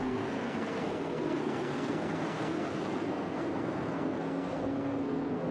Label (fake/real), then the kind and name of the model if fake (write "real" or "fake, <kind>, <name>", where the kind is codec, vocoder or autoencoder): fake, codec, SNAC